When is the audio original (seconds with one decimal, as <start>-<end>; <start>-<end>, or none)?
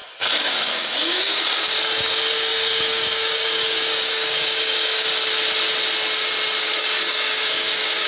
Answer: 5.1-6.6